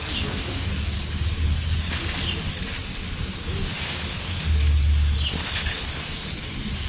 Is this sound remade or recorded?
recorded